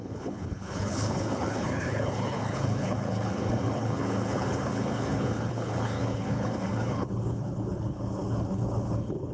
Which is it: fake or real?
fake